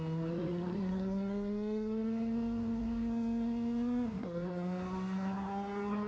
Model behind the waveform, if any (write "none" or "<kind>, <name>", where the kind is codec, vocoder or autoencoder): codec, SNAC